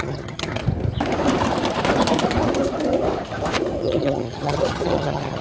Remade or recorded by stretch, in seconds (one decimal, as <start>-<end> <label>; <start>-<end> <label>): 0.0-0.6 remade; 0.6-3.8 recorded; 3.8-5.4 remade